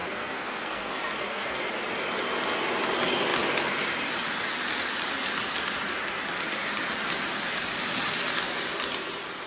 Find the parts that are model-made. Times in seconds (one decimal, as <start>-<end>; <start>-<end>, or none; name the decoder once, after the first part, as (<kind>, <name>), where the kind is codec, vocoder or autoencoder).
0.0-1.6 (codec, SNAC)

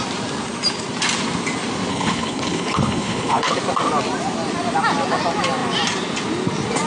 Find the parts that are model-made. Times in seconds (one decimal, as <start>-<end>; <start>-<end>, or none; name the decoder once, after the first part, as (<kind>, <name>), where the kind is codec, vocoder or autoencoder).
1.9-3.5 (codec, HILCodec)

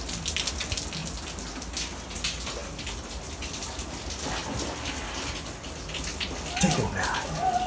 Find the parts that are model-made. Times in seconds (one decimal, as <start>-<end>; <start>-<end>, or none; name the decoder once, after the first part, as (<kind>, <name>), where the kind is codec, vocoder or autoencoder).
none

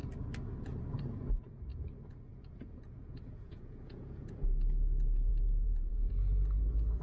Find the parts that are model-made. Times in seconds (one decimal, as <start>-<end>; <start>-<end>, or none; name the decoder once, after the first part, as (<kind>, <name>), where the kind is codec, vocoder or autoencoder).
1.7-4.3 (vocoder, Vocos); 5.3-6.1

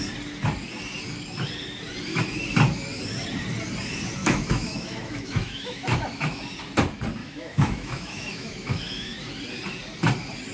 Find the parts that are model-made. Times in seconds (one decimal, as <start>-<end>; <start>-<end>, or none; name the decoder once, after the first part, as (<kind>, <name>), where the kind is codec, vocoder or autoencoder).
4.2-6.4 (autoencoder, DAC-VAE); 7.2-9.3

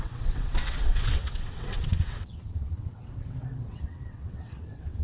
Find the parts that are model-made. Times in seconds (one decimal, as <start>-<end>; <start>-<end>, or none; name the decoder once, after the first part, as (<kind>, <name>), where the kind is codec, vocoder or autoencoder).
0.0-5.0 (vocoder, WaveNeXt)

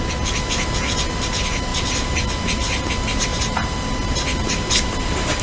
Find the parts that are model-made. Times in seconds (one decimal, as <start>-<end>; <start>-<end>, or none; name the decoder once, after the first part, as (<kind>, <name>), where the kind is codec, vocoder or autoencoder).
1.7-2.3 (vocoder, BigVGAN v2)